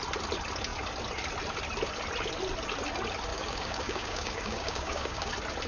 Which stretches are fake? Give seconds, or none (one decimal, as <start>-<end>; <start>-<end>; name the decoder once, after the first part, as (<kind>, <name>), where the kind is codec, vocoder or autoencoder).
3.3-5.3 (codec, DAC)